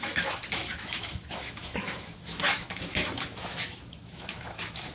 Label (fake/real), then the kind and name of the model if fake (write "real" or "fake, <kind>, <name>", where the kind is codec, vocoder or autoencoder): fake, autoencoder, DAC-VAE